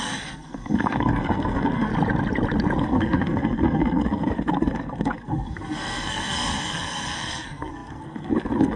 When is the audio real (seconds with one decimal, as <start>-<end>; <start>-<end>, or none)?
1.9-2.8

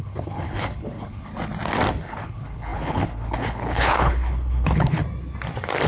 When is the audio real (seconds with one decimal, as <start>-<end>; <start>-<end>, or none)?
1.3-1.9; 5.0-5.9

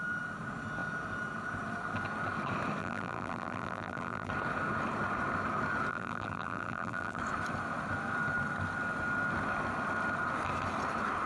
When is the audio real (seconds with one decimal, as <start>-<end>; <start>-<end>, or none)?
0.0-2.8; 4.3-5.9; 7.2-11.3

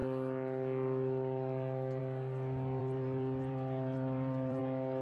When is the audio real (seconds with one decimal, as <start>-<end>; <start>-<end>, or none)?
0.0-2.8; 4.6-5.0

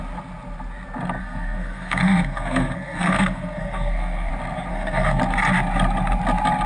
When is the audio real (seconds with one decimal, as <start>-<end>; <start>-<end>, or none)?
0.0-1.2; 4.3-4.7; 5.2-6.7